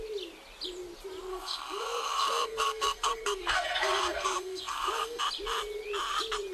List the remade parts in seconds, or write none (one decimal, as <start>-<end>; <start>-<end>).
1.3-5.2